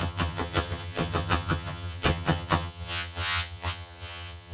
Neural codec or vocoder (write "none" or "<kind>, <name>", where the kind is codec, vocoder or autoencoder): vocoder, HiFi-GAN